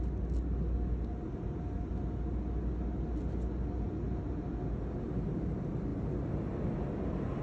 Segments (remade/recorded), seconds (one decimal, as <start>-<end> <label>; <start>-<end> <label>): 0.0-7.4 recorded